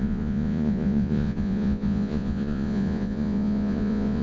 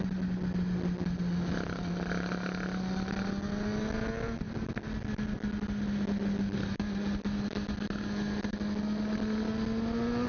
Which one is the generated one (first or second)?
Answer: first